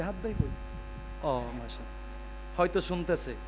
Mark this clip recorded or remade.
recorded